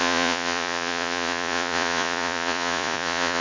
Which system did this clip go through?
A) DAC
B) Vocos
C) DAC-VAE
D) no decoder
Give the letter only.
B